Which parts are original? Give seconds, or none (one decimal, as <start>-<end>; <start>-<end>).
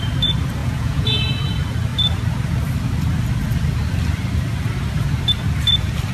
0.0-0.6; 1.2-6.1